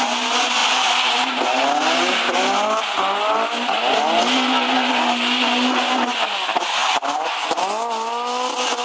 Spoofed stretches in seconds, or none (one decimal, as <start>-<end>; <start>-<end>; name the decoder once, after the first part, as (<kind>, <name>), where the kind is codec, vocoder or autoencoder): 0.6-1.3 (vocoder, BigVGAN v2); 6.8-7.6